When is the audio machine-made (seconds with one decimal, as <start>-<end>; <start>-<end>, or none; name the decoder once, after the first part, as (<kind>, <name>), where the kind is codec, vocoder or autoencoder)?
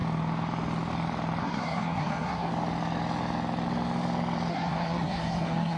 1.4-2.5 (codec, SNAC); 4.5-5.8